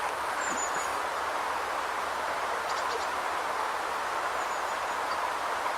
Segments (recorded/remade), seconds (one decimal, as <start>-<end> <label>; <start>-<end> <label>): 0.0-5.8 recorded